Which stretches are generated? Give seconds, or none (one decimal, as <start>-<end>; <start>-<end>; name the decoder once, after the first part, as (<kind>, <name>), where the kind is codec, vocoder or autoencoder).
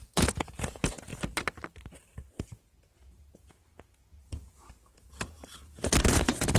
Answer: 0.0-1.1 (vocoder, Vocos); 2.3-6.6